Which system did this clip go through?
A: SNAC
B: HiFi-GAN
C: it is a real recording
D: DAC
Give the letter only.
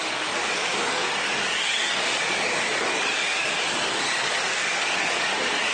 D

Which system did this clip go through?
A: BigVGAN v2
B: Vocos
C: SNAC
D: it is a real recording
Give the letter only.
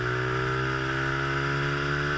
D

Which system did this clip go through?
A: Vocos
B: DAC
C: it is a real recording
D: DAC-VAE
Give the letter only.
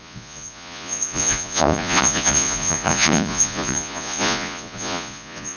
A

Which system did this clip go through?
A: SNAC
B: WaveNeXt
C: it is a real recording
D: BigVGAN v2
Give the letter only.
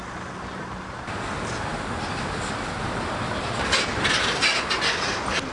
C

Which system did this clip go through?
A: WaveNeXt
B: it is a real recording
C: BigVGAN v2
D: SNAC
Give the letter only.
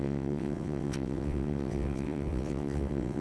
A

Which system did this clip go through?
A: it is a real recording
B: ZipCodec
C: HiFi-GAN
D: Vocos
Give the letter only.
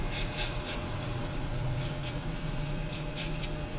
D